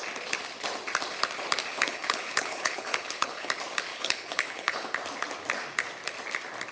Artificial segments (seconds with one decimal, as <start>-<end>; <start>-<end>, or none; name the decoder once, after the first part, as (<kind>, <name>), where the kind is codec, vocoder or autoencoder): 1.7-3.5 (codec, HILCodec); 3.9-4.9